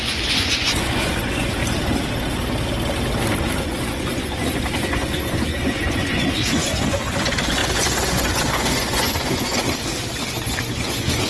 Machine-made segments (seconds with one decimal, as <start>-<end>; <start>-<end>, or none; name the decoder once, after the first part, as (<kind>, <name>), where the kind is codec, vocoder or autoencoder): 0.0-1.6 (vocoder, Vocos); 3.6-9.6; 10.3-11.3